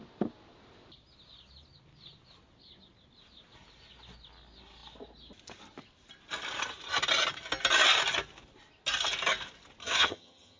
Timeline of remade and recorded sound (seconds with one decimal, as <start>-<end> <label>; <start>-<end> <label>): 0.0-9.8 recorded; 9.8-10.6 remade